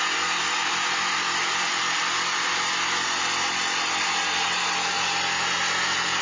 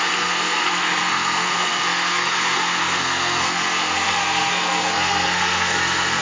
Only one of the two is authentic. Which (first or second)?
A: first